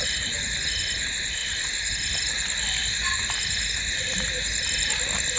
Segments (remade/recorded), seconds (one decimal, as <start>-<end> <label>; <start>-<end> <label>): 0.0-5.4 recorded